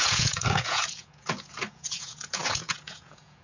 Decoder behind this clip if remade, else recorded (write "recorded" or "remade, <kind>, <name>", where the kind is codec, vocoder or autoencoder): remade, vocoder, Vocos